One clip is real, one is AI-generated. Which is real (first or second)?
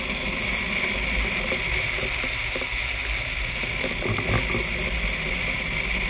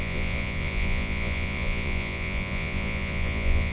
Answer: first